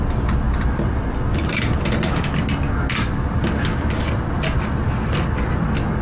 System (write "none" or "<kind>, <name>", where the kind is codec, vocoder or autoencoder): none